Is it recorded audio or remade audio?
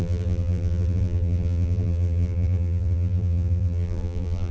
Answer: remade